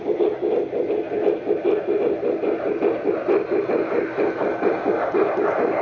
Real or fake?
real